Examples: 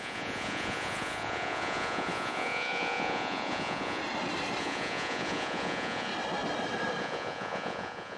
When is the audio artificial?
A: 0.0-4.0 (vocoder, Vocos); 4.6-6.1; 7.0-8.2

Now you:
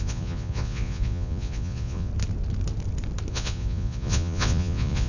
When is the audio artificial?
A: 0.0-2.1 (vocoder, Vocos); 3.3-5.1

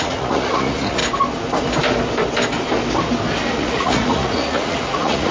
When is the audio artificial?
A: 0.0-1.0 (vocoder, Vocos); 3.5-5.3